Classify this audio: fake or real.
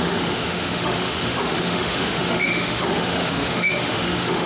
fake